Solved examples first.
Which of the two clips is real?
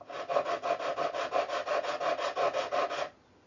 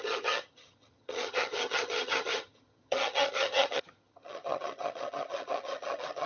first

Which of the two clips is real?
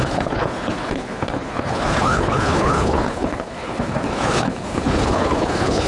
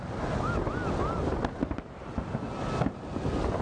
second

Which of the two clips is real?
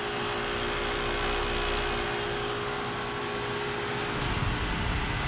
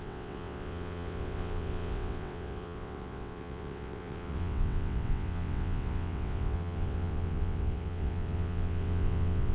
first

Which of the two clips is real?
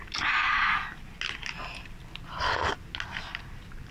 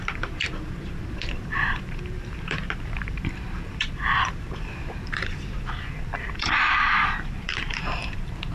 first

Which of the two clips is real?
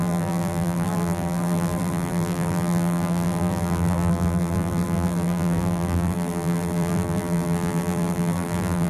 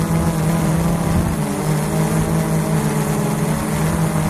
second